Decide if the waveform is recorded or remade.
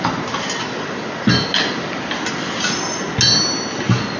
recorded